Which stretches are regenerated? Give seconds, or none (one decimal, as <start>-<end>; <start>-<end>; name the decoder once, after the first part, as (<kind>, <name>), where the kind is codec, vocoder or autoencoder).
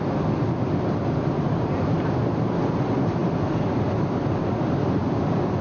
none